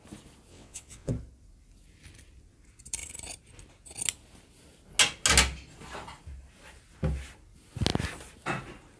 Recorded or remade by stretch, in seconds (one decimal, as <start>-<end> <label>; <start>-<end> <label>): 0.0-0.5 recorded; 0.5-1.1 remade; 1.1-9.0 recorded